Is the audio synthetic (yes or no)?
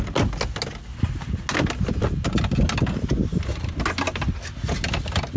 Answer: no